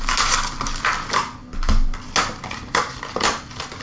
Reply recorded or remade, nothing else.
recorded